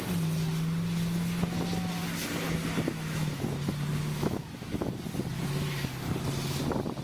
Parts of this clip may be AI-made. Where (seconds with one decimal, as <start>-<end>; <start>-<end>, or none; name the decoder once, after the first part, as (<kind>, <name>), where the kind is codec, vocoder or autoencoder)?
2.9-3.4 (autoencoder, DAC-VAE); 3.9-4.9